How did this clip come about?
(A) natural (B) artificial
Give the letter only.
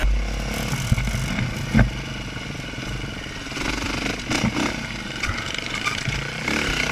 A